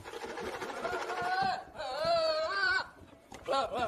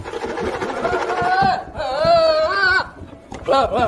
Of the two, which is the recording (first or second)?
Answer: second